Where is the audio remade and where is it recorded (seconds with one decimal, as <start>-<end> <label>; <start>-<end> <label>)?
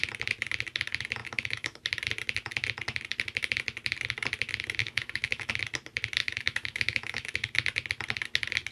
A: 0.0-1.2 recorded; 1.2-1.8 remade; 1.8-4.8 recorded; 4.8-5.5 remade; 5.5-6.2 recorded; 6.2-7.4 remade; 7.4-8.7 recorded